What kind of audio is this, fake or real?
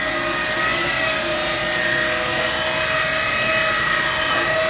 real